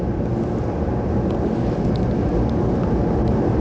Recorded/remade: recorded